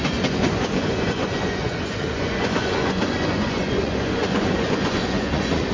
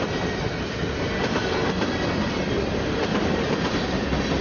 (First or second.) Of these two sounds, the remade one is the first